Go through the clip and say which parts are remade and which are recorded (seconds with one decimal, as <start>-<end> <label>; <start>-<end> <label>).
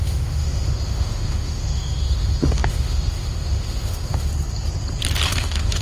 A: 0.0-4.3 remade; 4.3-5.3 recorded; 5.3-5.8 remade